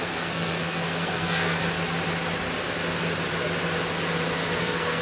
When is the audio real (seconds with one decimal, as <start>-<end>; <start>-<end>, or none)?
1.6-4.6